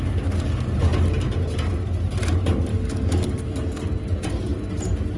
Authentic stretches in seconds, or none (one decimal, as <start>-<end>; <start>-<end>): 0.0-2.7; 3.8-5.2

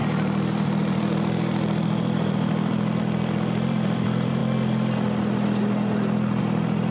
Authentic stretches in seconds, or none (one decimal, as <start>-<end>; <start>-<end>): 4.4-6.4

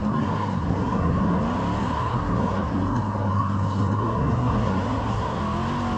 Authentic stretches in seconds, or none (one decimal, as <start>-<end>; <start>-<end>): 1.4-1.8; 5.4-6.0

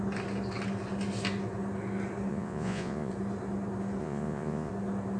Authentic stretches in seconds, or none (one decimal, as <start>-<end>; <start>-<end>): 0.0-2.3; 3.1-4.0; 4.7-5.2

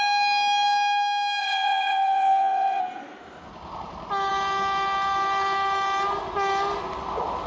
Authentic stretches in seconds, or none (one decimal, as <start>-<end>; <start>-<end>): 0.0-1.4; 2.8-7.5

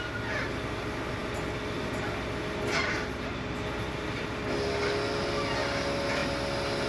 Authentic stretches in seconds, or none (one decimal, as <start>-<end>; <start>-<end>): 0.0-6.9